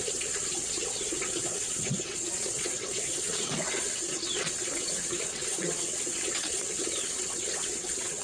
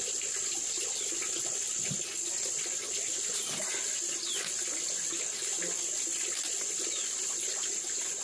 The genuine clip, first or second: second